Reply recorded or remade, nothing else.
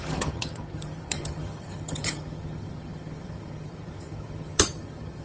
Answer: remade